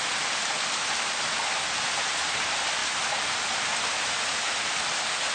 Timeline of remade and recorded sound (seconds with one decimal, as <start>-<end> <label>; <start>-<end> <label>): 0.0-5.3 recorded